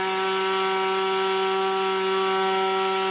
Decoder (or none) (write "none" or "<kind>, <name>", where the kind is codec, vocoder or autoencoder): none